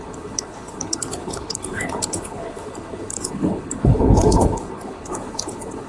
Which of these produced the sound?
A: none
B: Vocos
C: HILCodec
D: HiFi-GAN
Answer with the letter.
C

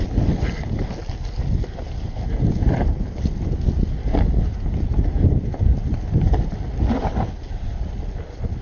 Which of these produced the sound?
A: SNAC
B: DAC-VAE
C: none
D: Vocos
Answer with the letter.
C